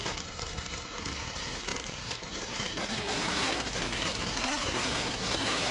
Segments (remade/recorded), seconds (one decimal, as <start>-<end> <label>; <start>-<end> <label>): 0.0-5.7 remade